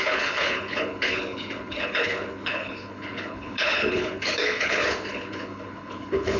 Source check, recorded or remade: remade